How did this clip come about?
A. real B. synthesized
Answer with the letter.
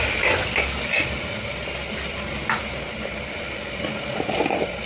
A